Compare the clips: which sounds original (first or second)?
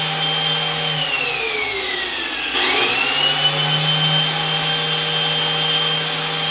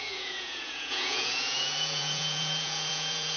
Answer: first